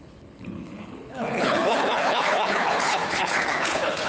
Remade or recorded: remade